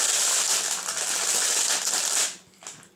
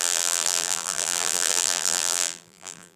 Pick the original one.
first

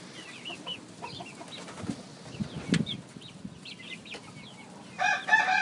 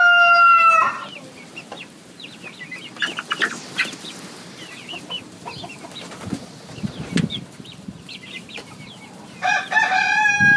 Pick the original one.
first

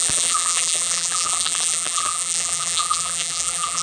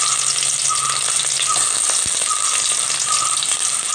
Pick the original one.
second